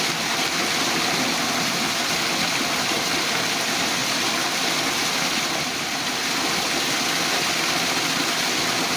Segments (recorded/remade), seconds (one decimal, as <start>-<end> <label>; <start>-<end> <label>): 0.0-9.0 recorded